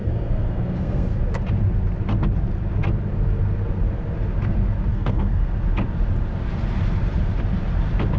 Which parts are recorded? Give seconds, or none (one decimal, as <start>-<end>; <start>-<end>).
1.2-4.9; 5.5-8.2